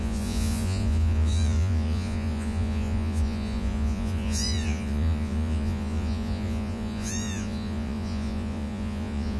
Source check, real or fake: fake